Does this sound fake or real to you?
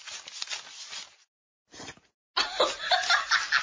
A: real